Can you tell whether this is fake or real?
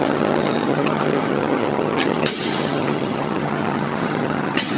fake